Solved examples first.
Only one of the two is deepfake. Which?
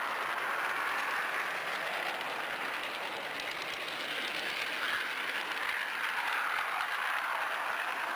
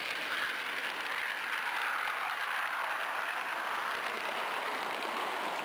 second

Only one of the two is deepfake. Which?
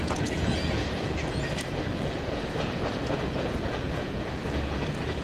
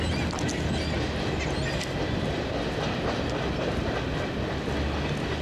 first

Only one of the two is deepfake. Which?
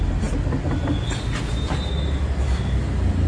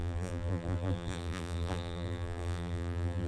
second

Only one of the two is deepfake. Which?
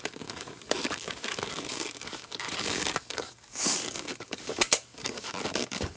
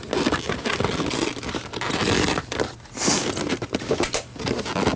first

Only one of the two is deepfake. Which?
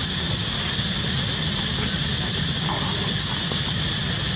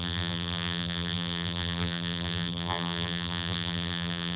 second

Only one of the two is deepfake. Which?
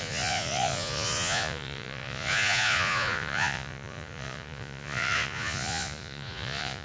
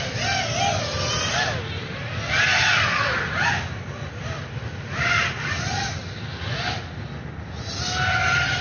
first